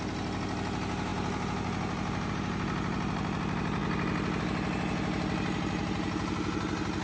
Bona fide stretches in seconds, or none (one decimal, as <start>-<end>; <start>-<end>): 0.0-7.0